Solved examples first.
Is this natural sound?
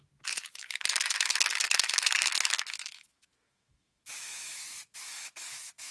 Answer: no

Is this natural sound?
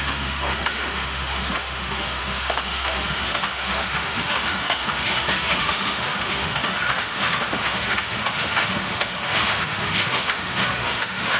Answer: no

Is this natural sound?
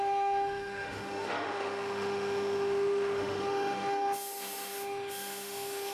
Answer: no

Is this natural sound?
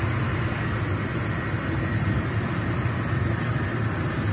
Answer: yes